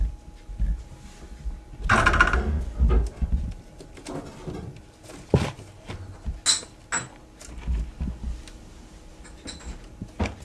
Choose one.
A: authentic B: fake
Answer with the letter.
A